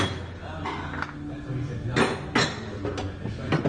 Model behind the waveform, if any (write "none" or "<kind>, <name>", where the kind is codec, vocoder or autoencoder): none